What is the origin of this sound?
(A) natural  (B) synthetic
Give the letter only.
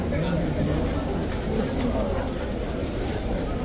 A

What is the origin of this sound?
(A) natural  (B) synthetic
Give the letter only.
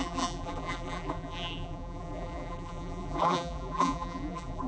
B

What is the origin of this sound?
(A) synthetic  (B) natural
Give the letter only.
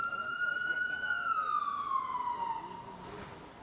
B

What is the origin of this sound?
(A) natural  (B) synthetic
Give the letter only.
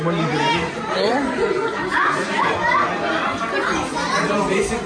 A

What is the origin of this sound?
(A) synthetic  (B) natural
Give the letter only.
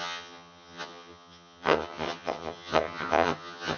A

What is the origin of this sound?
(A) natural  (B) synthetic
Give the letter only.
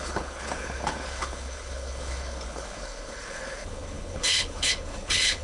B